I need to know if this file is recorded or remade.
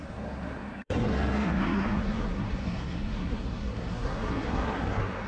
remade